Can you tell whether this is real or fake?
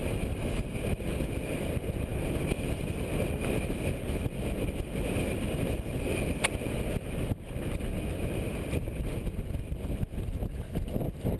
real